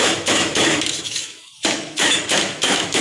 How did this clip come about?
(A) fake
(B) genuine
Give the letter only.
A